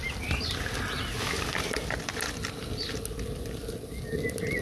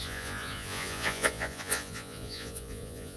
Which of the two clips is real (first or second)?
first